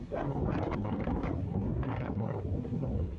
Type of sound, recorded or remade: remade